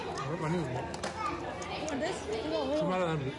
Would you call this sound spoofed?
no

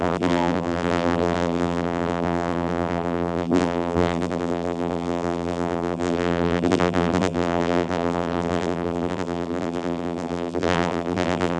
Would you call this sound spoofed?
yes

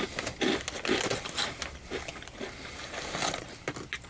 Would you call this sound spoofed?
no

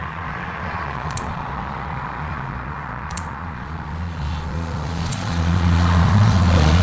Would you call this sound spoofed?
yes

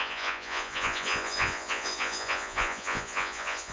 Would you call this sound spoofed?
yes